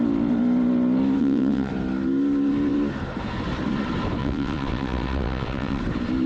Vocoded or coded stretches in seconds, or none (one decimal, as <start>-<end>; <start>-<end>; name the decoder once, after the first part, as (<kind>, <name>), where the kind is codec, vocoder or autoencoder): 1.2-1.7 (vocoder, WaveNeXt); 4.2-5.8

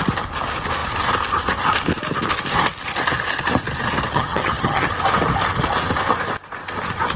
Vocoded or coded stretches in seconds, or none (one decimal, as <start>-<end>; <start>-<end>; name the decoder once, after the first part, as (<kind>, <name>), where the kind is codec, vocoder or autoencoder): 4.1-4.9 (vocoder, HiFi-GAN)

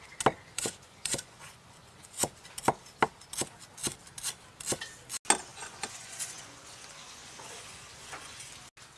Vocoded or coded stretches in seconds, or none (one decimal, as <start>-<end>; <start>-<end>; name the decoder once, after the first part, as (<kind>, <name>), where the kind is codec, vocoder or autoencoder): 0.4-2.5 (vocoder, Vocos); 5.5-8.5

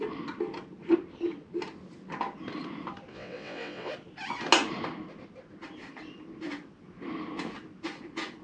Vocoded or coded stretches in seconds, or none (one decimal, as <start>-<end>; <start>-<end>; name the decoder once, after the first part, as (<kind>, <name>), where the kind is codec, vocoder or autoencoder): 3.1-3.9 (vocoder, WaveNeXt)

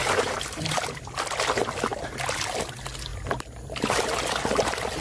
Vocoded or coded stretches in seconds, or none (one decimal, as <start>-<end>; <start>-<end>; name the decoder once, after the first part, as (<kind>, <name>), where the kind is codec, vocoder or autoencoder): 0.0-0.9 (vocoder, BigVGAN v2)